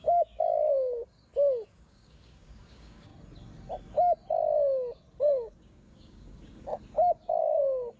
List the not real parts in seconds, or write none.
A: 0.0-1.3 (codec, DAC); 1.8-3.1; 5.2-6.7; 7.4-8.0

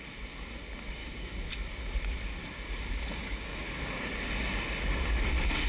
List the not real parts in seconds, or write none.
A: 1.0-1.5 (codec, DAC); 3.2-4.3

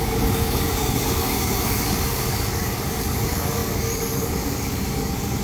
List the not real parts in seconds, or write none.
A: 0.0-5.4 (codec, DAC)

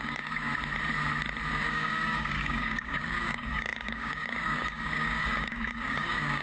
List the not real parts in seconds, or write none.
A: 0.0-0.5 (codec, DAC); 1.5-6.4